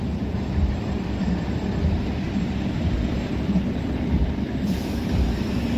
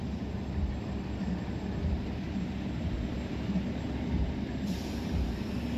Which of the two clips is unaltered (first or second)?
second